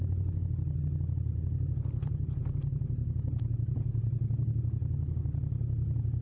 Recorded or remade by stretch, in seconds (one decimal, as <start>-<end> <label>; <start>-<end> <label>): 0.0-6.2 recorded